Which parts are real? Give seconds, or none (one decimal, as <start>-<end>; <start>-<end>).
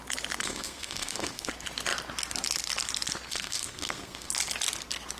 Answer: 0.0-0.4; 1.5-3.3; 4.3-5.2